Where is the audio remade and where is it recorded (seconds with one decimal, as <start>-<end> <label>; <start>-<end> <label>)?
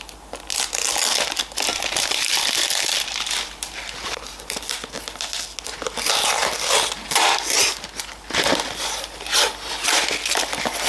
0.0-1.7 recorded; 1.7-4.6 remade; 4.6-10.9 recorded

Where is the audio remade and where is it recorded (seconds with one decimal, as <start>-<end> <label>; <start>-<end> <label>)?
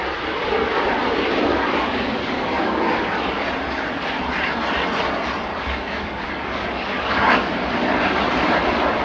0.0-1.5 recorded; 1.5-3.3 remade; 3.3-5.5 recorded; 5.5-7.7 remade; 7.7-9.0 recorded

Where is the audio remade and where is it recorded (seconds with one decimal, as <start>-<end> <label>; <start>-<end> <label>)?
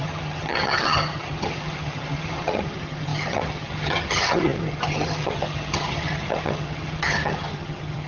0.0-8.1 remade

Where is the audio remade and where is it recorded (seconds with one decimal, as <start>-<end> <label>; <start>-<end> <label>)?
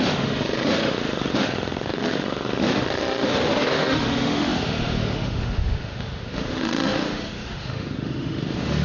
0.0-8.8 remade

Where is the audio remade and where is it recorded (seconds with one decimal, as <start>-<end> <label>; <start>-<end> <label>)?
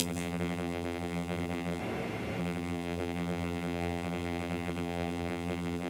0.0-1.8 remade; 1.8-2.4 recorded; 2.4-5.9 remade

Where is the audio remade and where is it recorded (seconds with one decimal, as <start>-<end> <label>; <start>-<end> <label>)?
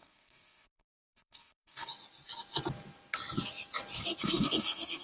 0.0-1.9 remade; 1.9-4.2 recorded; 4.2-5.0 remade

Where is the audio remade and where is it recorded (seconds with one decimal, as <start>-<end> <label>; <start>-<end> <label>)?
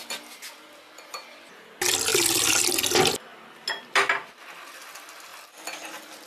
0.0-6.3 recorded